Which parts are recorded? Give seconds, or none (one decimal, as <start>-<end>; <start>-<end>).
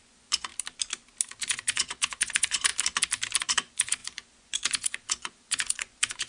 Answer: 0.5-1.4; 2.7-3.4